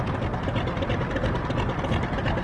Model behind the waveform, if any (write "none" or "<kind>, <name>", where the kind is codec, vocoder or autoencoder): none